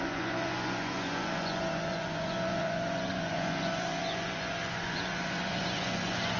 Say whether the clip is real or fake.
fake